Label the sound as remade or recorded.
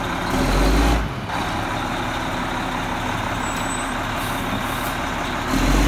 recorded